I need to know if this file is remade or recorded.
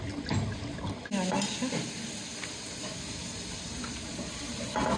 recorded